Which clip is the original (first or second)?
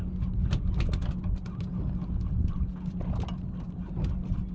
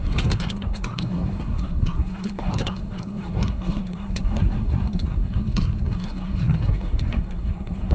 first